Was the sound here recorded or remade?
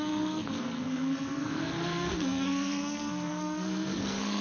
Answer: remade